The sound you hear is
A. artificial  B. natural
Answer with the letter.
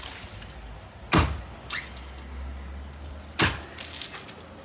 B